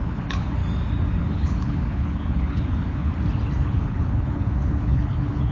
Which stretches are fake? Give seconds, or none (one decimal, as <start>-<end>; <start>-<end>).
0.0-0.6; 1.2-3.1; 3.6-5.5